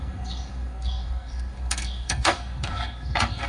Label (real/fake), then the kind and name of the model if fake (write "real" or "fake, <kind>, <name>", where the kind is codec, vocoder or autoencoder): fake, codec, SNAC